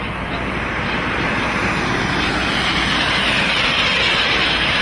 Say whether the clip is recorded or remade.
remade